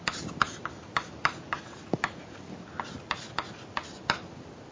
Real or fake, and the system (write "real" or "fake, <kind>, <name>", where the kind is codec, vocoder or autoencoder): real